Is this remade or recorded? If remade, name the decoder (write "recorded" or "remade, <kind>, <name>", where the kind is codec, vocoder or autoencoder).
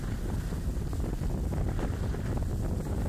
recorded